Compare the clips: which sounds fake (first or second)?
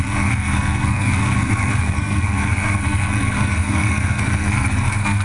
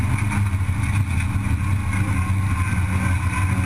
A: first